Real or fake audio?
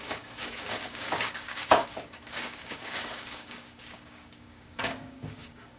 fake